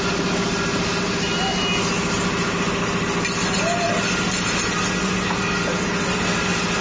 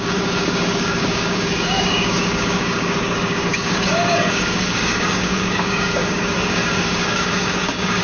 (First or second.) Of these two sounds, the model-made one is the second